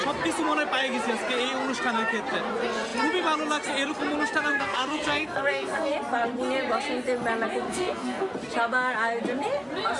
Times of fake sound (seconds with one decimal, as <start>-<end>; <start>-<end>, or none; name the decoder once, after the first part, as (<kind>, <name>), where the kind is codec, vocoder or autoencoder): 4.5-5.9 (codec, SNAC); 7.7-8.3